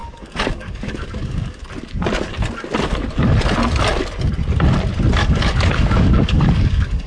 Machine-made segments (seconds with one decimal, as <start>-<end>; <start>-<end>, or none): 0.0-1.6; 5.1-7.1

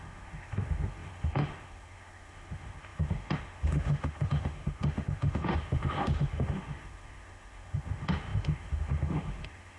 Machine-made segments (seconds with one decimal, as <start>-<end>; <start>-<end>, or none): 0.0-9.8

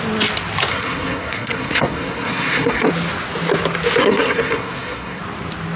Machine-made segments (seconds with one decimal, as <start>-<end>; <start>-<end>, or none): 0.7-2.9; 4.0-5.2

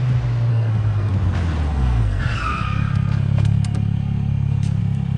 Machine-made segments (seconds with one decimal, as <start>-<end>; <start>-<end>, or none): 0.5-1.1; 1.7-4.8

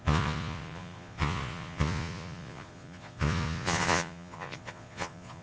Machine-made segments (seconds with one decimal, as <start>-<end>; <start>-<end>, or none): 0.0-5.4

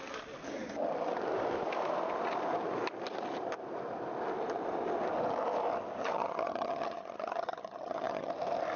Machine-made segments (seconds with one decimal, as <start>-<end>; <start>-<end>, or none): 6.0-8.3

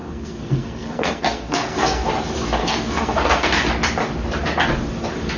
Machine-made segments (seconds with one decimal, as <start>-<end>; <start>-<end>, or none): 0.0-2.1; 2.6-3.7